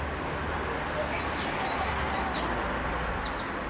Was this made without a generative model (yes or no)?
yes